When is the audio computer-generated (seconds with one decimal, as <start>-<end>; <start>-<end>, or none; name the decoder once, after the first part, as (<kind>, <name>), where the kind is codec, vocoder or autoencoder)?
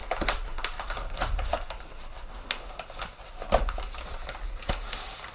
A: none